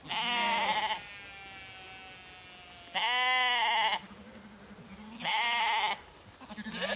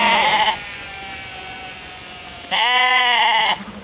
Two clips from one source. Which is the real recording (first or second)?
first